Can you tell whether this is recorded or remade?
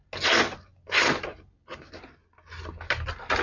recorded